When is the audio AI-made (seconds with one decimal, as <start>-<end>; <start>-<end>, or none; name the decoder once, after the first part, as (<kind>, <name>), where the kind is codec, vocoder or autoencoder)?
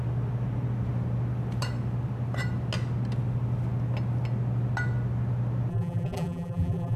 5.7-7.0 (vocoder, BigVGAN v2)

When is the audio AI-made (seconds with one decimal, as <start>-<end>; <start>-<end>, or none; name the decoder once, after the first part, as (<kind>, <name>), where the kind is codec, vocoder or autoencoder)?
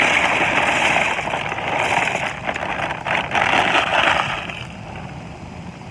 none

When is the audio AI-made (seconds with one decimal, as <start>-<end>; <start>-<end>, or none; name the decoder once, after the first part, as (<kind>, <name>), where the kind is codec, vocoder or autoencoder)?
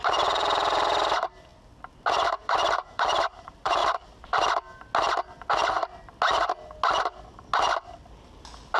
0.0-1.5 (vocoder, BigVGAN v2); 2.1-3.8; 7.0-7.5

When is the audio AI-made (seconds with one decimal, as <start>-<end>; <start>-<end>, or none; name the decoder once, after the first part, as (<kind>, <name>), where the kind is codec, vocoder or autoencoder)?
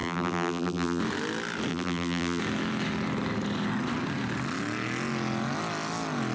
0.0-1.0 (vocoder, BigVGAN v2); 1.7-2.4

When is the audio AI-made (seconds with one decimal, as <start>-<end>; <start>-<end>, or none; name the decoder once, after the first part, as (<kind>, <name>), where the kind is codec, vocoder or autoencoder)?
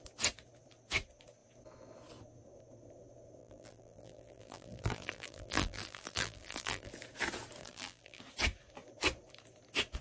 3.4-6.9 (vocoder, BigVGAN v2); 7.6-8.2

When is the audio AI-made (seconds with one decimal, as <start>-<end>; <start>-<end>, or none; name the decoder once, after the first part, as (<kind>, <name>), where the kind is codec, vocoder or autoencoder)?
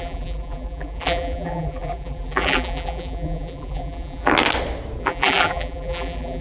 0.0-4.3 (vocoder, BigVGAN v2); 5.0-6.4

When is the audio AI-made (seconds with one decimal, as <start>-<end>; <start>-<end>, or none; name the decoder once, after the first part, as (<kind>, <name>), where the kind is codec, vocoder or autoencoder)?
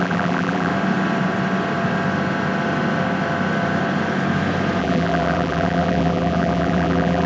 0.0-0.7 (vocoder, BigVGAN v2); 4.8-7.3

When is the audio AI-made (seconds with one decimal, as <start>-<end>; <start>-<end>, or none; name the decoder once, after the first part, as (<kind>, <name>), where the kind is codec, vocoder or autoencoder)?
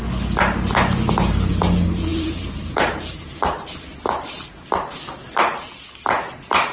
2.1-4.0 (vocoder, BigVGAN v2)